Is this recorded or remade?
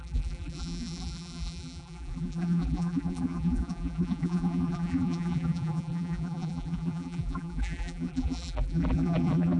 remade